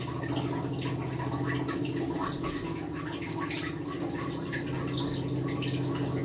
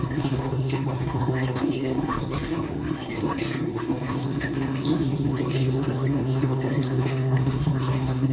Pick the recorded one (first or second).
first